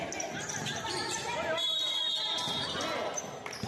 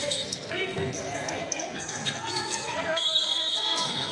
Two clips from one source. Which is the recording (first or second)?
first